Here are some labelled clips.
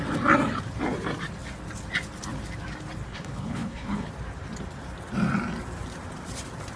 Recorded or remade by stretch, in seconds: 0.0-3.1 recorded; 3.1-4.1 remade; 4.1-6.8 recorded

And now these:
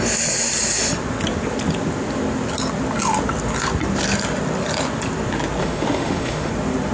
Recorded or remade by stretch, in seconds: 0.0-5.6 recorded; 5.6-6.5 remade; 6.5-6.9 recorded

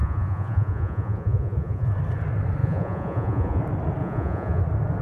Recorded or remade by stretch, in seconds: 0.0-1.9 remade; 1.9-2.6 recorded; 2.6-3.6 remade; 3.6-4.0 recorded; 4.0-4.6 remade; 4.6-5.0 recorded

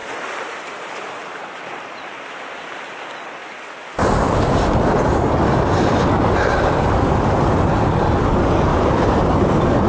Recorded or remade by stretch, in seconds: 0.0-2.2 remade; 2.2-8.7 recorded; 8.7-9.3 remade; 9.3-9.9 recorded

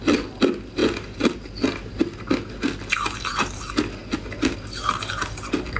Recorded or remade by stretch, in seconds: 0.0-5.8 recorded

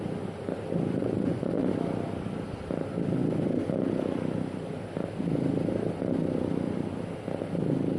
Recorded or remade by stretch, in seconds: 0.0-1.0 recorded; 1.0-1.7 remade; 1.7-8.0 recorded

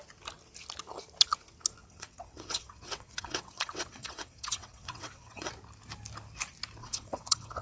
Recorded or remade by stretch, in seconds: 0.0-1.8 recorded; 1.8-5.5 remade; 5.5-6.8 recorded; 6.8-7.6 remade

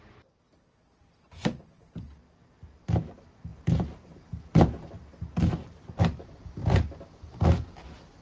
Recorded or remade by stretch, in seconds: 0.0-3.5 recorded; 3.5-4.9 remade; 4.9-8.2 recorded